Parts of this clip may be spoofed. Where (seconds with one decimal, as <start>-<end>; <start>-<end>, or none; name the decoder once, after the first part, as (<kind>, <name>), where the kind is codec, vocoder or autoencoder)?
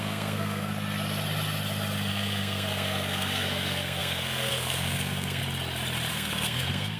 0.0-0.7 (codec, SNAC); 2.1-5.4; 6.1-7.0